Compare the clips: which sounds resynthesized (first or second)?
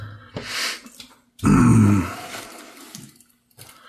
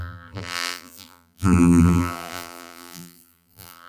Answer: second